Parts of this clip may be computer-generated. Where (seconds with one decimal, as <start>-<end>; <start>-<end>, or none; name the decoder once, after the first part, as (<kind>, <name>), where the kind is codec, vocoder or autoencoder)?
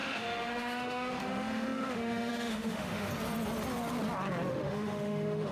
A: 0.0-3.1 (autoencoder, DAC-VAE); 4.5-5.5